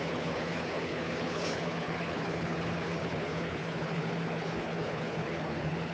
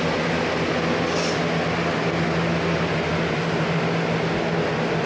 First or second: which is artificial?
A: first